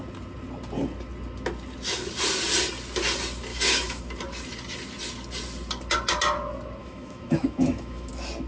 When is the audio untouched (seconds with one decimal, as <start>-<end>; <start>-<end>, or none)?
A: 0.0-3.5; 4.0-6.8; 8.1-8.5